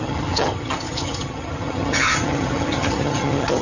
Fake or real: fake